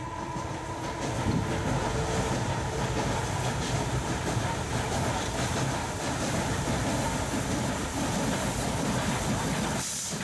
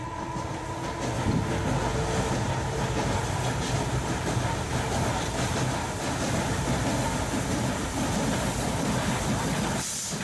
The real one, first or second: second